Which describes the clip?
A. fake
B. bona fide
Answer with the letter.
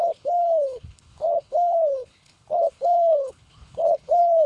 A